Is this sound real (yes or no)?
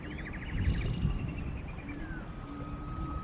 yes